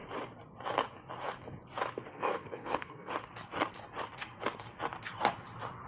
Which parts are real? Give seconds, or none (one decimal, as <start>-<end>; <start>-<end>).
0.0-2.1; 3.1-5.9